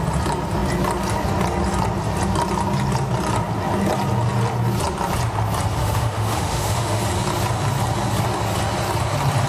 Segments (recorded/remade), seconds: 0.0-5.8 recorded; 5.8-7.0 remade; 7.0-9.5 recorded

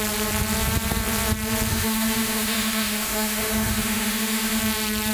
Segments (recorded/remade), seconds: 0.0-1.7 recorded; 1.7-4.6 remade; 4.6-5.1 recorded

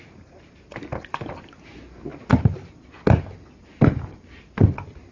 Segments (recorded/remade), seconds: 0.0-5.1 recorded

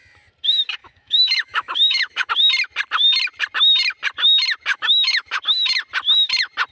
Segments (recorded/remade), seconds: 0.0-0.8 recorded; 0.8-2.3 remade; 2.3-4.7 recorded; 4.7-5.4 remade; 5.4-6.7 recorded

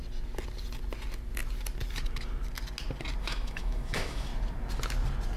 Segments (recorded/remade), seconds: 0.0-3.2 recorded; 3.2-4.3 remade; 4.3-5.4 recorded